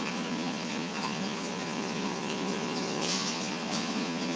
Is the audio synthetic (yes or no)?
yes